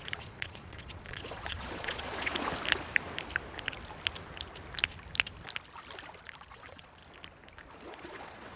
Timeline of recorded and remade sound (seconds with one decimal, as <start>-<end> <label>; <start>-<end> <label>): 0.0-2.3 remade; 2.3-6.5 recorded; 6.5-7.0 remade; 7.0-8.0 recorded; 8.0-8.6 remade